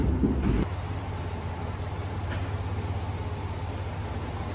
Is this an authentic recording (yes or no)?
yes